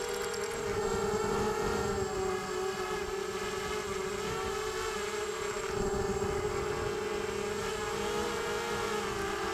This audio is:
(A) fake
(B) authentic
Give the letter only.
B